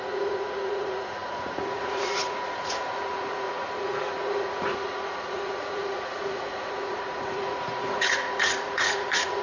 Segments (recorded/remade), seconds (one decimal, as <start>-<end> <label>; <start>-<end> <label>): 0.0-9.4 remade